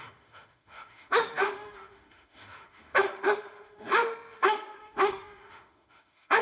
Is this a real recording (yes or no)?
no